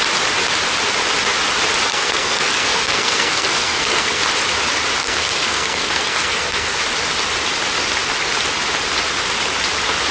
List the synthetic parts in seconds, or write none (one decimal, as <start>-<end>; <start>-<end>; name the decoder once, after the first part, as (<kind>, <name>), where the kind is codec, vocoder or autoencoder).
1.9-4.2 (codec, SNAC); 5.0-6.8